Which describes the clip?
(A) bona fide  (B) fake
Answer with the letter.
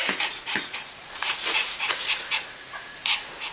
B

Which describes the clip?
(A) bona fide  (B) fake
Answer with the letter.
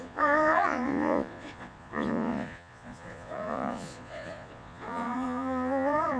B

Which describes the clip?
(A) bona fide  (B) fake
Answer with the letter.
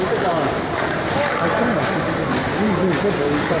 A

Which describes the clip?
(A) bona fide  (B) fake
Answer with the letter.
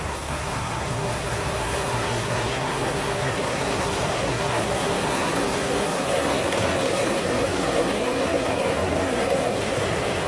B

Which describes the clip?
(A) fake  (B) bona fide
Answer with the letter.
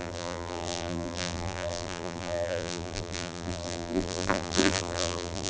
A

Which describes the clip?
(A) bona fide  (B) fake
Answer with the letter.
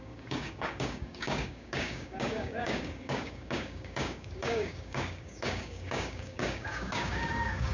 B